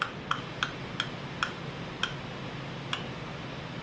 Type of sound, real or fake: real